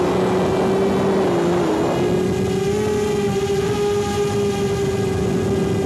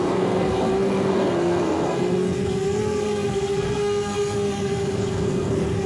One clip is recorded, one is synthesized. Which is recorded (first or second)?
first